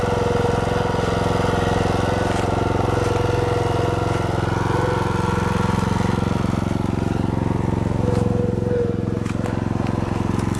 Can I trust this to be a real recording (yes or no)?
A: yes